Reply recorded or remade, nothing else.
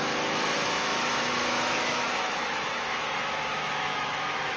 remade